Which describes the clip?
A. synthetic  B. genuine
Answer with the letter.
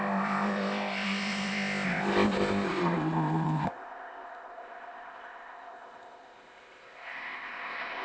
A